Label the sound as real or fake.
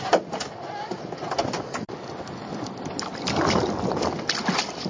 real